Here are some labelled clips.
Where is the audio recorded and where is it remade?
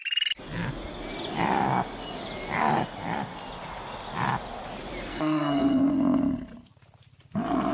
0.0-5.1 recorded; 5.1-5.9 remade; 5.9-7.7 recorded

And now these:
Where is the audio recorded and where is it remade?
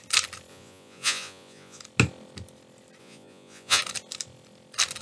0.0-0.5 recorded; 0.5-1.8 remade; 1.8-3.0 recorded; 3.0-3.8 remade; 3.8-5.0 recorded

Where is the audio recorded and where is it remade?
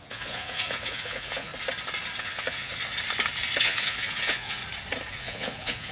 0.0-1.5 remade; 1.5-2.2 recorded; 2.2-2.7 remade; 2.7-3.6 recorded; 3.6-4.6 remade; 4.6-5.1 recorded; 5.1-5.9 remade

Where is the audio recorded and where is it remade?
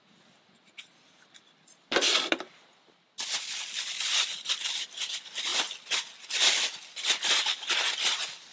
0.0-8.5 recorded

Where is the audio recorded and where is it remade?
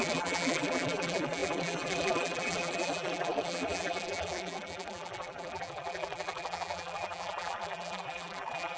0.0-8.8 remade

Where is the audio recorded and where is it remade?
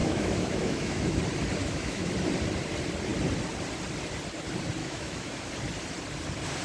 0.0-1.2 remade; 1.2-1.6 recorded; 1.6-2.1 remade; 2.1-4.8 recorded; 4.8-5.5 remade; 5.5-6.6 recorded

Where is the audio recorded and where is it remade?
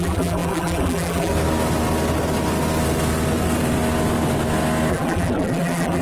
0.0-1.3 remade; 1.3-4.9 recorded; 4.9-6.0 remade